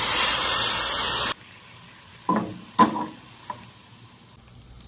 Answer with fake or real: real